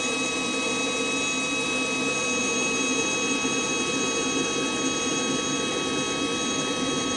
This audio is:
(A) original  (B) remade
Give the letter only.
B